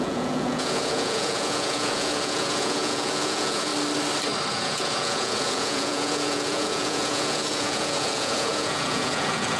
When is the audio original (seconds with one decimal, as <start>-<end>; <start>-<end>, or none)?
3.7-4.5